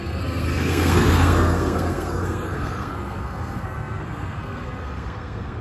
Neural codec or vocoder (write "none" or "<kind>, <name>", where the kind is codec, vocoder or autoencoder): codec, SNAC